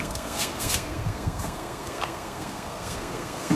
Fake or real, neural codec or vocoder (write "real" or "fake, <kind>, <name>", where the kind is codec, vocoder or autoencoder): fake, codec, SNAC